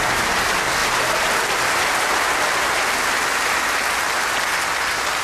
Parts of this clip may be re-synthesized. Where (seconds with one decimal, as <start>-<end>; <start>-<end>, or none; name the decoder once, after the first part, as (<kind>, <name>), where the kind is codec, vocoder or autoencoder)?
none